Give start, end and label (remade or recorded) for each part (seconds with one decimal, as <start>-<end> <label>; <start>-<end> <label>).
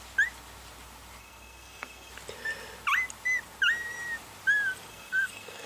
0.0-1.2 recorded; 1.2-2.1 remade; 2.1-4.9 recorded; 4.9-5.7 remade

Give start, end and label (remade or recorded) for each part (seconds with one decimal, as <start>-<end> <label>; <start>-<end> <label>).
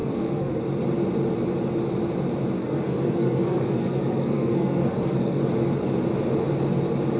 0.0-0.6 remade; 0.6-2.6 recorded; 2.6-5.4 remade; 5.4-7.2 recorded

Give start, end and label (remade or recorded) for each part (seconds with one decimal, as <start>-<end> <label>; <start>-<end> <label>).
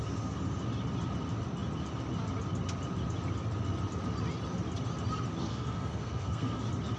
0.0-5.4 recorded; 5.4-6.6 remade; 6.6-7.0 recorded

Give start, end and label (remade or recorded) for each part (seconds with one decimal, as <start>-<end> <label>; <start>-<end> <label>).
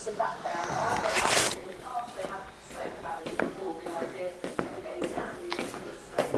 0.0-0.5 remade; 0.5-1.3 recorded; 1.3-1.9 remade; 1.9-3.2 recorded; 3.2-6.4 remade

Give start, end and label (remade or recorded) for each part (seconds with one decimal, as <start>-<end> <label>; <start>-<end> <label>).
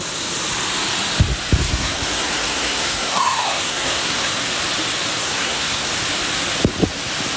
0.0-1.6 recorded; 1.6-4.3 remade; 4.3-5.2 recorded; 5.2-5.9 remade; 5.9-7.4 recorded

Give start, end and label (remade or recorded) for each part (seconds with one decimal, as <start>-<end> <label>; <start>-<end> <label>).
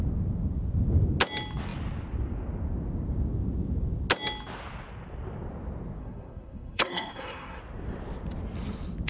0.0-6.0 recorded; 6.0-7.6 remade; 7.6-9.1 recorded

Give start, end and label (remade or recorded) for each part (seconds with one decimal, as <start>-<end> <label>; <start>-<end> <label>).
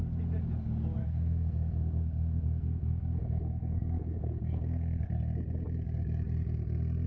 0.0-1.0 recorded; 1.0-5.1 remade; 5.1-7.1 recorded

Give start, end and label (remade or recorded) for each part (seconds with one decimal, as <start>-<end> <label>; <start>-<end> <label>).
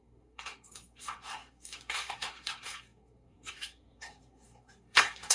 0.0-5.3 remade